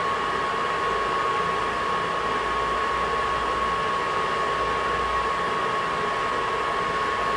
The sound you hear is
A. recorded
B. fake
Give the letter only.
A